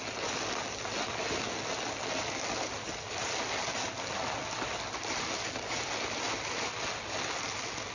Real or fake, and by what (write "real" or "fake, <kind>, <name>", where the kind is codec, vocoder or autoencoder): real